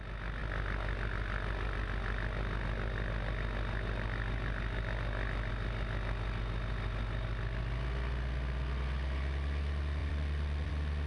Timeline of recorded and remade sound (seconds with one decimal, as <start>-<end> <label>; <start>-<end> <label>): 0.0-10.0 recorded; 10.0-10.7 remade; 10.7-11.1 recorded